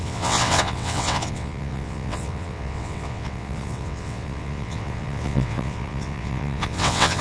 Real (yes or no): no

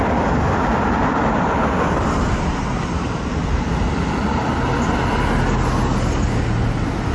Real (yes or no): yes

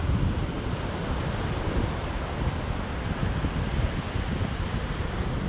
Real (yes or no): yes